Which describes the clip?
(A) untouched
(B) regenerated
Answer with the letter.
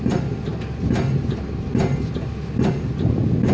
A